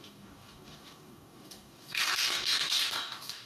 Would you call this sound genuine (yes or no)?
no